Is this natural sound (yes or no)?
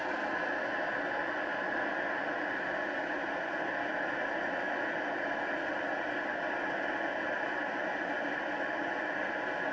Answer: yes